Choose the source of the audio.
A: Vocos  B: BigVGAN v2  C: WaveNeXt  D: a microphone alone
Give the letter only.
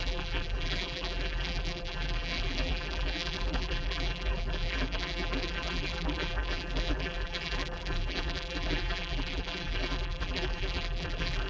B